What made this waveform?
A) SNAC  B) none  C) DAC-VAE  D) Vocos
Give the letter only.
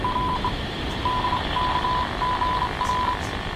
B